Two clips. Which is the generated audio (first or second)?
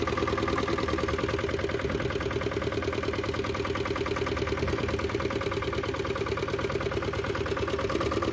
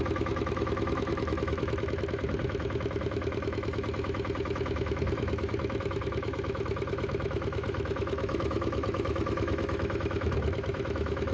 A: second